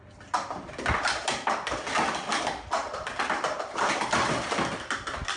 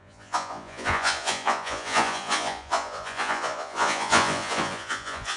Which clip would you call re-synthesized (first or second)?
second